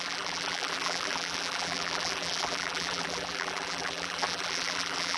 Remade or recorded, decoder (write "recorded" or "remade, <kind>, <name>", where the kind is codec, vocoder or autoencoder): remade, vocoder, BigVGAN v2